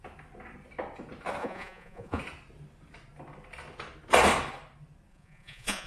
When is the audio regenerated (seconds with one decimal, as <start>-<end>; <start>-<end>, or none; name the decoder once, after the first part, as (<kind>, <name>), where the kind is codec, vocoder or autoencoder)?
1.4-2.2 (vocoder, Vocos); 5.1-5.9